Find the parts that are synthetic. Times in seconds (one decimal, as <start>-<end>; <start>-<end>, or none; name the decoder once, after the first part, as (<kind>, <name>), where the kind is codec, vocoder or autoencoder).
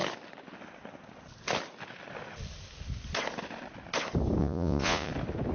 4.4-5.1 (vocoder, Vocos)